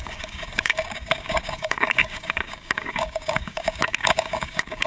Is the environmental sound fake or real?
fake